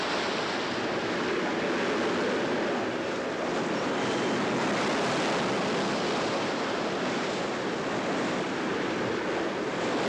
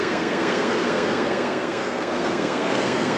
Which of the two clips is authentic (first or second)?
first